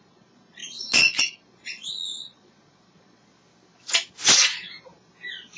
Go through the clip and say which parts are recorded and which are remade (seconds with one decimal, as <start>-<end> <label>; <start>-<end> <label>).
0.0-3.3 remade; 3.3-5.6 recorded